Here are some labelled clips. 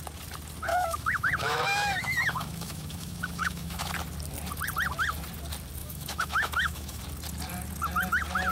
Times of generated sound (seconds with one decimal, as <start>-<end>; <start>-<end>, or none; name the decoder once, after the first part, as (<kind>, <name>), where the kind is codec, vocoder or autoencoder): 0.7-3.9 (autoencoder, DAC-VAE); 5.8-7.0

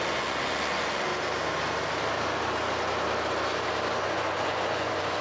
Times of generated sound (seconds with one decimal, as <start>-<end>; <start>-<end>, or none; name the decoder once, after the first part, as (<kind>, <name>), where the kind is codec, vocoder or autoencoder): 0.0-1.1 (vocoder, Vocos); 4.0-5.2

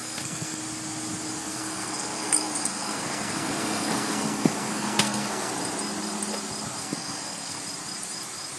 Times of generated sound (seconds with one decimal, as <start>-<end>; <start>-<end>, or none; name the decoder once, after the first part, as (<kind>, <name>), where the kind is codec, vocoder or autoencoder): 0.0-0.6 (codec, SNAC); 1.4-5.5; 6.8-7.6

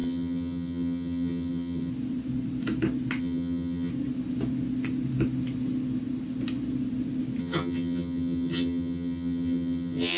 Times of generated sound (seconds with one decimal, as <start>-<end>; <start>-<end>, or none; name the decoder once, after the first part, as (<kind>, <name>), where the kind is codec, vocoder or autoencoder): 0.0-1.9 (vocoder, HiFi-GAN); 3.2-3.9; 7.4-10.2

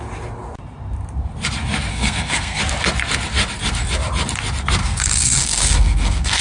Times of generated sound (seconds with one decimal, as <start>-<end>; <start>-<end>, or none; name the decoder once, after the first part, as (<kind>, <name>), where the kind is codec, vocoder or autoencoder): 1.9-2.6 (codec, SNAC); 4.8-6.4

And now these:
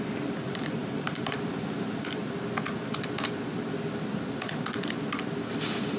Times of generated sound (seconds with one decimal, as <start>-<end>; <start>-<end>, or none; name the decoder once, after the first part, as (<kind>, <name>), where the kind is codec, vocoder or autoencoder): 0.0-2.2 (vocoder, BigVGAN v2); 5.5-6.0

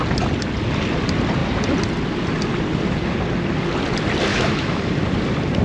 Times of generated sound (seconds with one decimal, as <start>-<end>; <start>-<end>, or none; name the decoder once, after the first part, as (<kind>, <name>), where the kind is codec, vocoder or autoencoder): 4.3-4.9 (autoencoder, DAC-VAE)

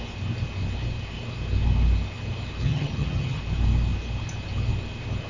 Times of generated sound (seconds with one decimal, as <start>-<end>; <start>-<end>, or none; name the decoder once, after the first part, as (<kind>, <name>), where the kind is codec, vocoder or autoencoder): 2.6-3.4 (vocoder, HiFi-GAN)